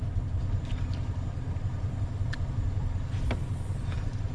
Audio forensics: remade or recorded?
recorded